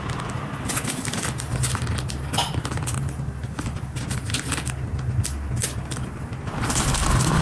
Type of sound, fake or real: real